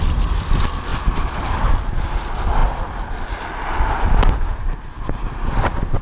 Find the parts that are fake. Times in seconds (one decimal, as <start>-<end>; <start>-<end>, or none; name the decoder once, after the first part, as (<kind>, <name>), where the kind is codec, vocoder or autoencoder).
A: none